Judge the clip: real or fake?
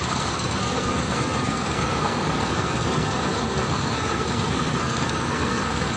fake